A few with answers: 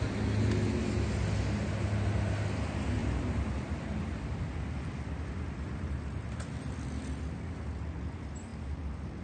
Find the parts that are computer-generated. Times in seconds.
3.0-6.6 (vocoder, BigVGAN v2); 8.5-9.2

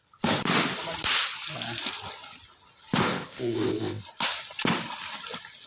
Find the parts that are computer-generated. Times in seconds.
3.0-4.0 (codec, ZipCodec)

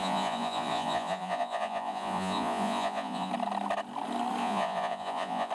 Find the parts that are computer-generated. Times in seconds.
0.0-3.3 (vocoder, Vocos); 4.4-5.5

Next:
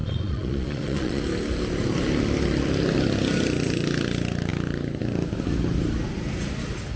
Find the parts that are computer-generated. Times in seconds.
0.0-1.2 (vocoder, Vocos)

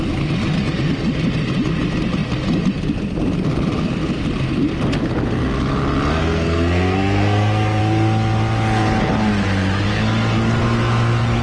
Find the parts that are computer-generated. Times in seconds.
6.2-7.8 (codec, SNAC)

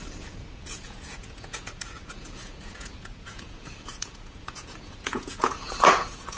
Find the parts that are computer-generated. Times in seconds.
0.0-6.4 (vocoder, Vocos)

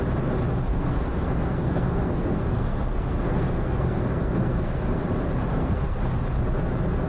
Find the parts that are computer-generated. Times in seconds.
0.7-5.0 (codec, SNAC); 5.5-6.0

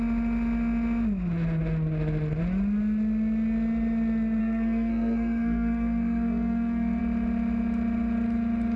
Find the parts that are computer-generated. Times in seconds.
4.4-7.0 (codec, SNAC)